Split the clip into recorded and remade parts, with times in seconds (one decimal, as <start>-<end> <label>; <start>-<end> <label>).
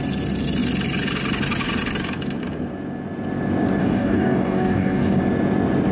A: 0.0-3.8 recorded; 3.8-5.2 remade; 5.2-5.9 recorded